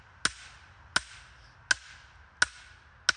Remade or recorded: recorded